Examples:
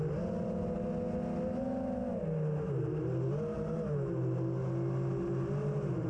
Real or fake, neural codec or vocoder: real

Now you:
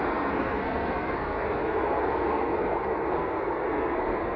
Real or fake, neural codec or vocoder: fake, codec, SNAC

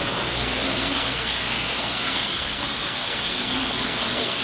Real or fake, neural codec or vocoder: fake, codec, SNAC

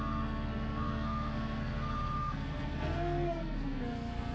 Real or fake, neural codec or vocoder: fake, codec, SNAC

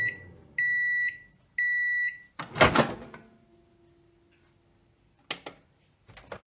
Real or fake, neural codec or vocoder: real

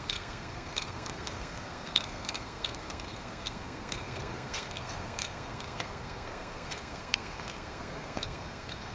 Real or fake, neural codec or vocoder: fake, codec, SNAC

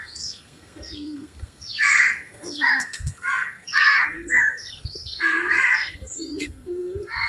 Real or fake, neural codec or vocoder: fake, codec, SNAC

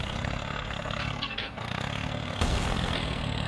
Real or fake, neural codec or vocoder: fake, codec, SNAC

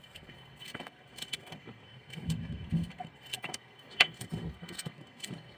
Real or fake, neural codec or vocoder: fake, codec, SNAC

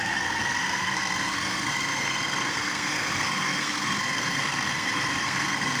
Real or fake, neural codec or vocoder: fake, codec, SNAC